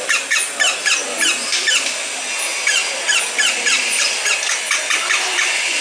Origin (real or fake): real